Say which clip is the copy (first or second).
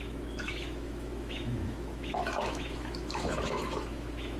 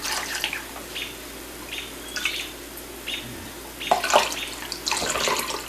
first